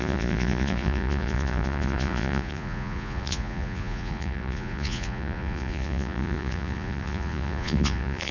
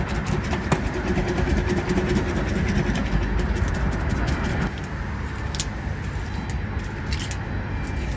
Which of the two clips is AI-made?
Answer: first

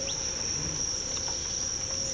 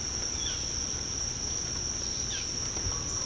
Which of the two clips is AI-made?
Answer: first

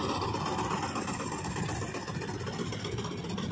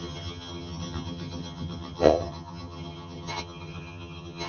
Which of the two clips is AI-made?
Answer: second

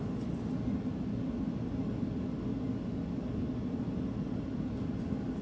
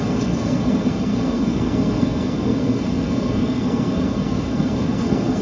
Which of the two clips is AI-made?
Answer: second